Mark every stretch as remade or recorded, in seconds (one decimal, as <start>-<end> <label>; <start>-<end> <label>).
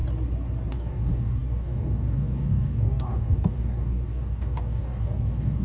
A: 0.0-0.7 recorded; 0.7-5.6 remade